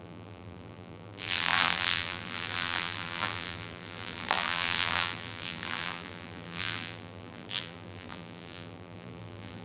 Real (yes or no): no